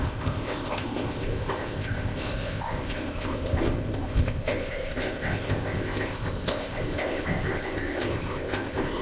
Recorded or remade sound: remade